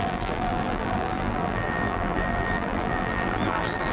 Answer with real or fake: fake